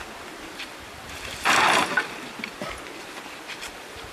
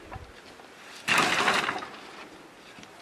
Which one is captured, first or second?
second